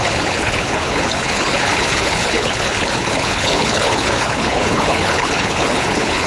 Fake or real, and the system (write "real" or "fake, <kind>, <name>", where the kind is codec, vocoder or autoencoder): fake, codec, HILCodec